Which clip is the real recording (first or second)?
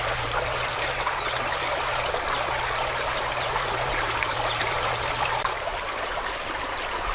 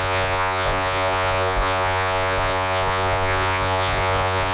first